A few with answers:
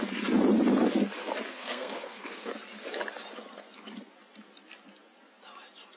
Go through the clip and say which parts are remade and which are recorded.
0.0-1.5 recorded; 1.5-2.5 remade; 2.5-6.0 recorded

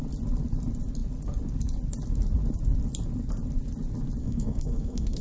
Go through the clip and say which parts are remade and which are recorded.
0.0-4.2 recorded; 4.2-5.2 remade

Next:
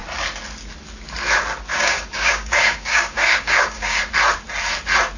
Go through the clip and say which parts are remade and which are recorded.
0.0-1.7 recorded; 1.7-4.0 remade; 4.0-5.2 recorded

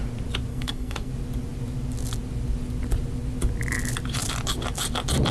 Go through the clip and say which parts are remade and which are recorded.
0.0-0.5 recorded; 0.5-1.1 remade; 1.1-5.3 recorded

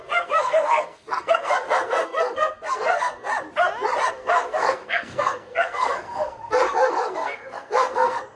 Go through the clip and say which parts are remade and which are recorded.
0.0-3.3 remade; 3.3-4.1 recorded; 4.1-8.4 remade